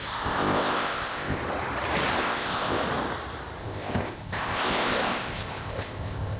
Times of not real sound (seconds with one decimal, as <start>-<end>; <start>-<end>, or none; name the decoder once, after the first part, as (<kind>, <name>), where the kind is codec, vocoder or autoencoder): 0.0-1.4 (codec, ZipCodec); 2.2-2.8; 3.6-6.4